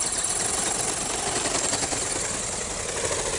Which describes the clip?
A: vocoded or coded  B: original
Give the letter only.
B